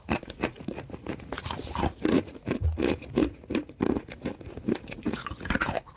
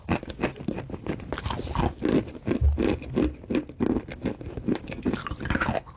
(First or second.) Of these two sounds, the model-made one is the first